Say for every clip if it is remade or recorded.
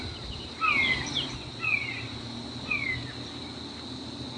recorded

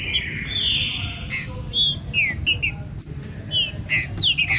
recorded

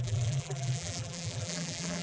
remade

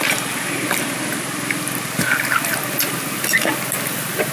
recorded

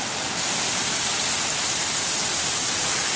recorded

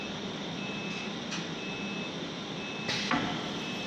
recorded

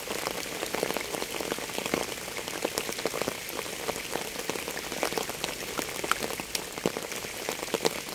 recorded